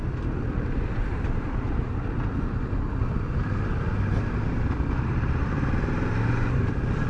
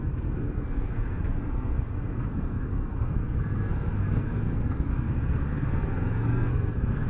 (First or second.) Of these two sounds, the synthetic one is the second